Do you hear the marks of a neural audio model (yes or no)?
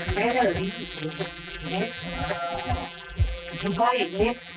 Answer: yes